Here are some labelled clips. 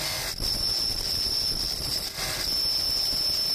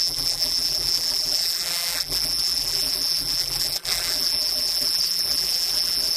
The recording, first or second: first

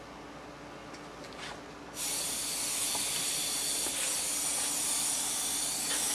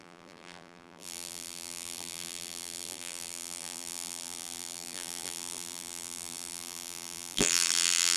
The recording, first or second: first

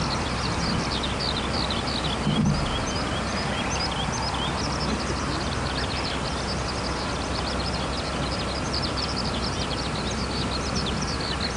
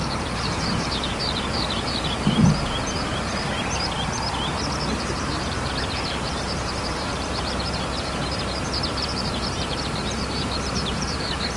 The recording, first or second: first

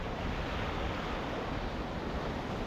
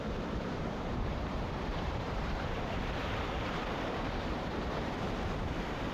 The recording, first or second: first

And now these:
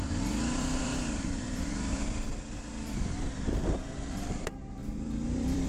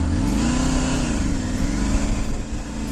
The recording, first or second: second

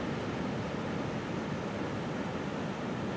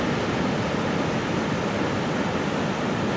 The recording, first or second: first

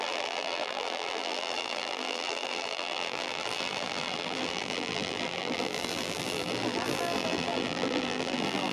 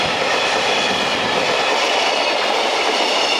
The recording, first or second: second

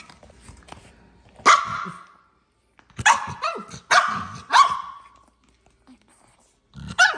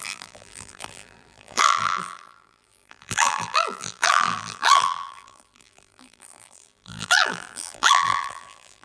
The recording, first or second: first